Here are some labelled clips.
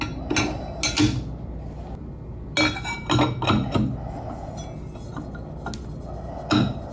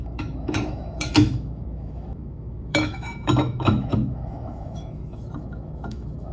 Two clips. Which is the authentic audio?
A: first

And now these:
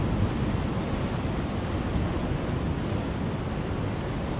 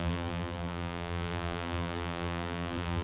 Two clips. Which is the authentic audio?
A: first